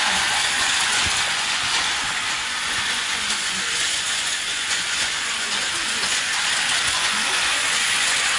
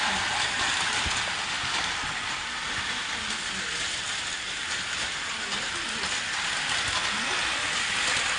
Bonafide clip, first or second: second